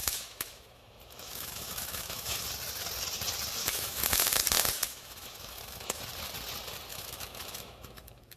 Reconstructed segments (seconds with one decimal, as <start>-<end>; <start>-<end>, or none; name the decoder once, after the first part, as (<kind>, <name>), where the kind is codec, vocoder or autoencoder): 0.0-2.5 (autoencoder, DAC-VAE); 3.6-6.0; 6.9-8.4